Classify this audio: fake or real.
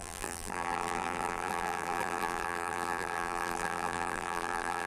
fake